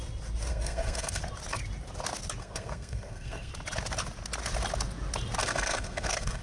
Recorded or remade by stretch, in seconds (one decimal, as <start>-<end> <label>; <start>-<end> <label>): 0.0-0.5 recorded; 0.5-1.2 remade; 1.2-2.4 recorded; 2.4-3.5 remade; 3.5-5.4 recorded; 5.4-6.4 remade